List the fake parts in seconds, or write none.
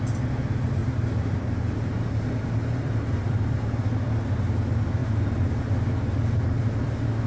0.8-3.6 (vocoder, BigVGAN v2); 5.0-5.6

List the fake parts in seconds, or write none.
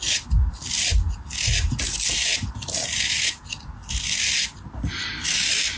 none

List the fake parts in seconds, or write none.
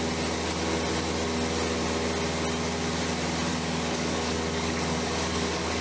3.5-5.8 (codec, DAC)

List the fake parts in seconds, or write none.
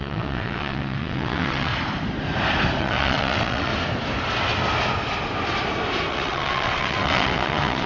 0.0-1.7 (vocoder, WaveNeXt); 2.8-3.7; 6.1-7.9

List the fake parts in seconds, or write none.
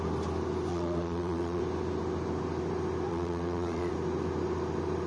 0.7-1.6 (vocoder, Vocos); 3.1-3.9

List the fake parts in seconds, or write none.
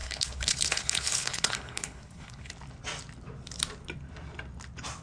0.0-2.5 (codec, HILCodec)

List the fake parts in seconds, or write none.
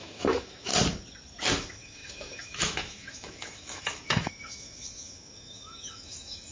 0.0-0.7 (autoencoder, DAC-VAE); 1.5-6.5